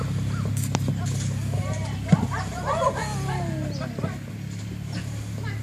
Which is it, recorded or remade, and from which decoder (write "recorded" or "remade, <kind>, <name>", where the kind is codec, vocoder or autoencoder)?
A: recorded